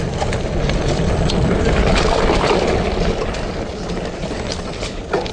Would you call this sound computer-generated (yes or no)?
no